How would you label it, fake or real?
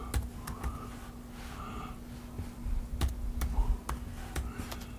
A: real